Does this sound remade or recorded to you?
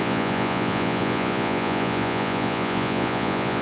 remade